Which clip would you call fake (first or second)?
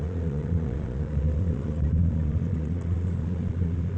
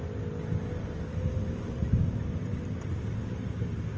first